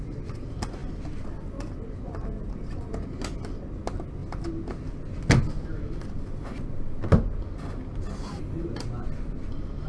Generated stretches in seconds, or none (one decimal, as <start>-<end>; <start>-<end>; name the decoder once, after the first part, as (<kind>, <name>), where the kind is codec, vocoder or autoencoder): none